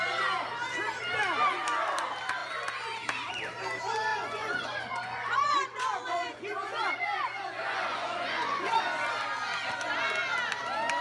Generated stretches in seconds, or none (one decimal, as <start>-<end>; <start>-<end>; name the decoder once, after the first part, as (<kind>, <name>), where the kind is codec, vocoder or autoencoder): 4.1-8.8 (vocoder, Vocos)

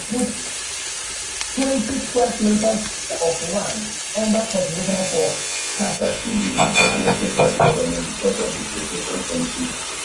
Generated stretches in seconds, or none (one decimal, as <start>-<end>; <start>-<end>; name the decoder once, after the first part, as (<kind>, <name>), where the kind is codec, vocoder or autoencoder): 4.9-7.6 (vocoder, Vocos)

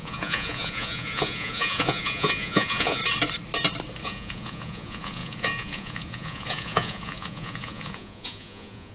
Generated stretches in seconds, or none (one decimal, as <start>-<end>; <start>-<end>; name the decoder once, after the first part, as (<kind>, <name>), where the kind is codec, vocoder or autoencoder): 0.0-3.0 (vocoder, Vocos); 4.0-8.9

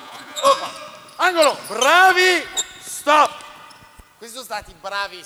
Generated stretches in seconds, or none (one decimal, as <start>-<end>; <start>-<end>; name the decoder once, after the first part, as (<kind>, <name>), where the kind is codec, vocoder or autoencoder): 0.0-0.7 (vocoder, Vocos)

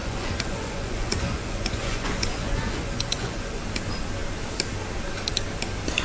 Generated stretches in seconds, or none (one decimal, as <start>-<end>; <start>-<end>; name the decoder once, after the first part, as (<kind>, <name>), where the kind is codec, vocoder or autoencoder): 0.0-3.6 (vocoder, Vocos)

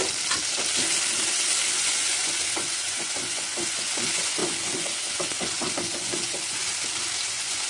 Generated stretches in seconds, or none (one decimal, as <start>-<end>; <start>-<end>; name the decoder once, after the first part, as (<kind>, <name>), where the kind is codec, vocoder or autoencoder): 1.8-6.7 (vocoder, Vocos); 7.3-7.7